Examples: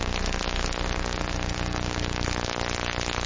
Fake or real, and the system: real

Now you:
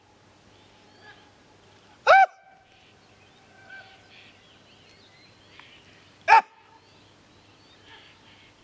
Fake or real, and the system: real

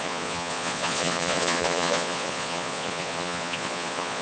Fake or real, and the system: fake, vocoder, Vocos